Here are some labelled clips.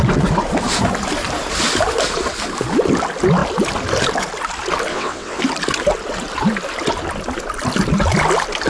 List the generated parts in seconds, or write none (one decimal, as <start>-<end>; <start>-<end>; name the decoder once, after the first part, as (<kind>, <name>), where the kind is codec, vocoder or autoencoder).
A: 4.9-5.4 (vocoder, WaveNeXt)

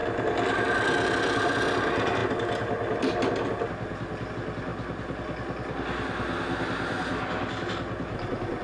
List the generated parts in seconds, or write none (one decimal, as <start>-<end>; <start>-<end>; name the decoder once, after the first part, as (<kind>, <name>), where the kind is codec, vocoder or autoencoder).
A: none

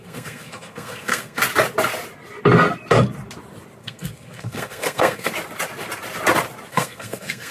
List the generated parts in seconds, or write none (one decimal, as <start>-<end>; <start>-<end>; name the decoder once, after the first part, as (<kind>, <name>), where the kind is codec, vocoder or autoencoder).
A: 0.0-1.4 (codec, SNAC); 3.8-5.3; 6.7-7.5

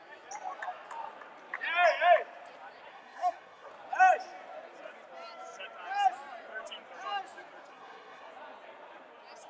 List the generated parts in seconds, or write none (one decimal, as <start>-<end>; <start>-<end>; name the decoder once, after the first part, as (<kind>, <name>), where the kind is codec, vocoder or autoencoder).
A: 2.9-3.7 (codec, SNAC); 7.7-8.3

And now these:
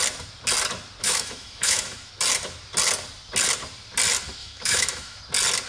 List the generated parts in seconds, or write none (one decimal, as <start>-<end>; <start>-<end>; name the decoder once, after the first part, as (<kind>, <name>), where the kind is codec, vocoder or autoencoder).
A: 1.0-2.1 (autoencoder, DAC-VAE); 4.4-5.2

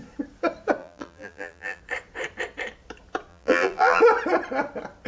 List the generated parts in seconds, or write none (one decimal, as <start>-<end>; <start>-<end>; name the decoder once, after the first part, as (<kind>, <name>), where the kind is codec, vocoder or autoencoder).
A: 0.8-1.8 (vocoder, BigVGAN v2); 3.3-4.0

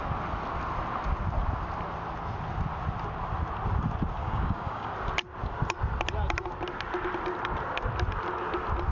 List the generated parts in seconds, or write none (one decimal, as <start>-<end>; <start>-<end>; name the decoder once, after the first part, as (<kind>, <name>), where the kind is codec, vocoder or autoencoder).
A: 4.2-4.9 (codec, DAC)